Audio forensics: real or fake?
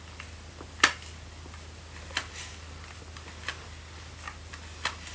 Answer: real